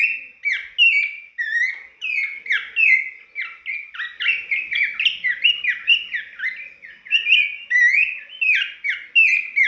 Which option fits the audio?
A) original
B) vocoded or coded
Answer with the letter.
A